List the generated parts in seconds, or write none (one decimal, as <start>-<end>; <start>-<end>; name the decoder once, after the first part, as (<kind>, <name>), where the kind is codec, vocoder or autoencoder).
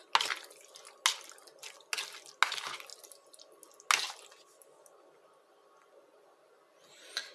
none